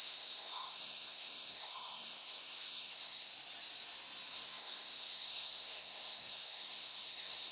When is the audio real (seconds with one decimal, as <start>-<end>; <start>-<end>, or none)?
3.3-4.3